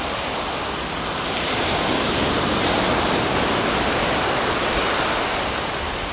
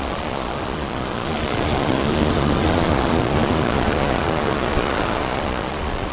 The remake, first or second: second